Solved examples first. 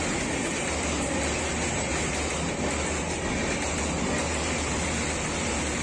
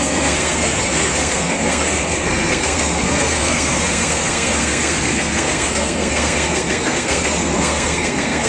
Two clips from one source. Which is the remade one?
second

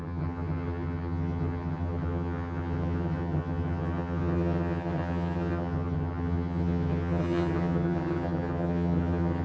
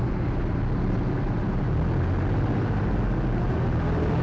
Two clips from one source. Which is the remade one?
first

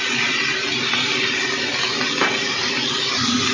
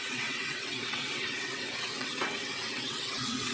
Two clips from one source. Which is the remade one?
second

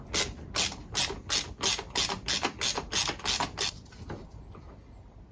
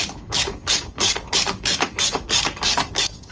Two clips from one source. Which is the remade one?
second